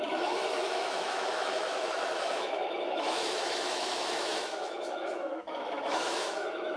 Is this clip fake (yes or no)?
yes